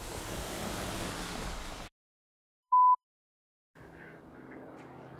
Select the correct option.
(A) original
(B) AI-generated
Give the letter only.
B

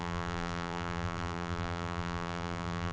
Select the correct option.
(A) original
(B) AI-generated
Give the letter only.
B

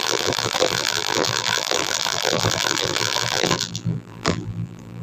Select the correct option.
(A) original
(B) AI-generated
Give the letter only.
B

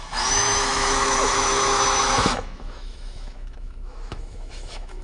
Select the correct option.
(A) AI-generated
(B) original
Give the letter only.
A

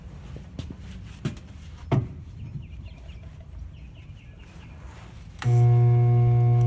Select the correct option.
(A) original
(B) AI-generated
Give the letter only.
A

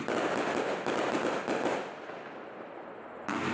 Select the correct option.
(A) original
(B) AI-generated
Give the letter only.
A